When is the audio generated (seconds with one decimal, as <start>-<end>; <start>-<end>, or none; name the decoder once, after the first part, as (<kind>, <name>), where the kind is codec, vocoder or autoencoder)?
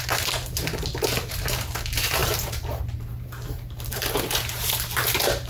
0.0-5.5 (vocoder, BigVGAN v2)